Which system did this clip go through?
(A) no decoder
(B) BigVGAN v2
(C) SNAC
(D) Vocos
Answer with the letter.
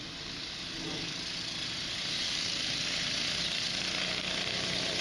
A